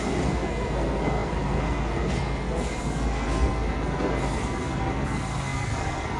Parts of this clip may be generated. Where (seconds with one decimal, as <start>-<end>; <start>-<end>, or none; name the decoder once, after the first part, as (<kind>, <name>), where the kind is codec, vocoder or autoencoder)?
0.0-6.2 (codec, SNAC)